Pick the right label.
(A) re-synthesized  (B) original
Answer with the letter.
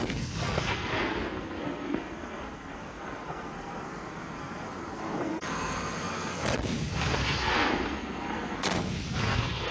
A